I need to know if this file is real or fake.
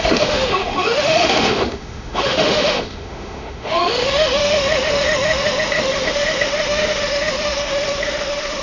fake